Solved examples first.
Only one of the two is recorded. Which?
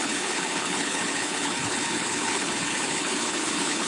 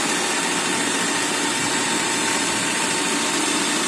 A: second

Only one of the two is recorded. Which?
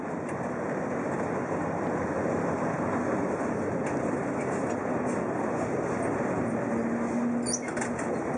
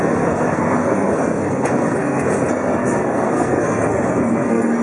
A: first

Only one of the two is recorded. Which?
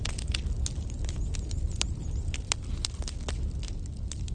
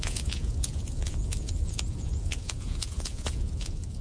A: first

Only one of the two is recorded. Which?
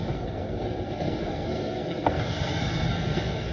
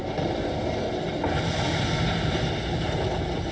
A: second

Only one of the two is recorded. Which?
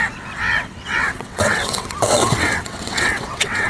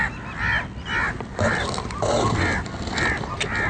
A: second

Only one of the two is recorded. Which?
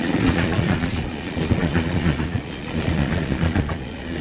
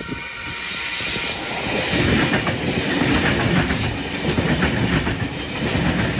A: second